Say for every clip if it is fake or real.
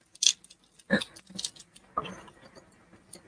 real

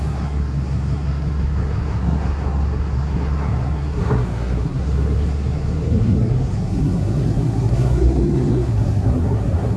fake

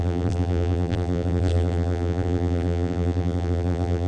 fake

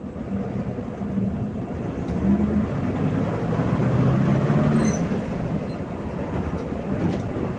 real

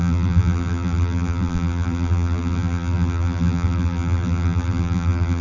fake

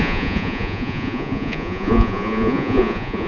fake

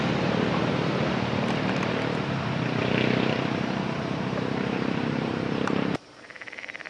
fake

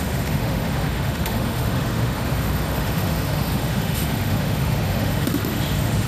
fake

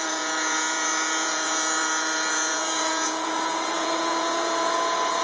fake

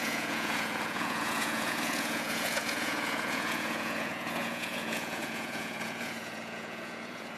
fake